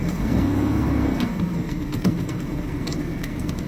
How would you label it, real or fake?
fake